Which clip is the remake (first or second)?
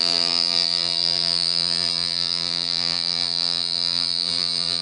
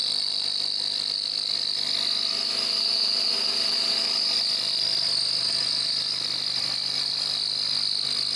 first